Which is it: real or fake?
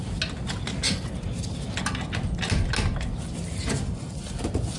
real